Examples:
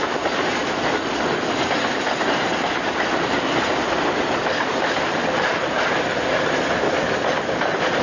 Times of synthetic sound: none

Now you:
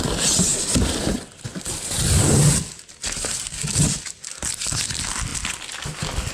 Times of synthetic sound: none

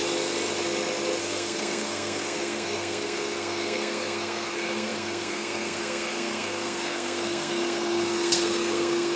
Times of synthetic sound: 1.2-9.2 (codec, SNAC)

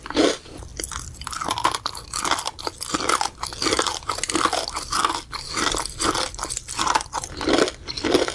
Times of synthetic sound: none

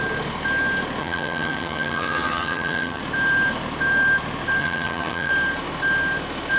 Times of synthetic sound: 1.0-3.0 (vocoder, HiFi-GAN); 4.6-5.3

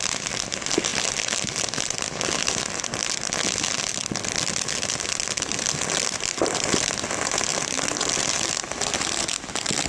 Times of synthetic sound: none